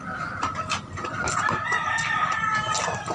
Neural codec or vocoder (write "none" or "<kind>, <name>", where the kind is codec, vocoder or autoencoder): none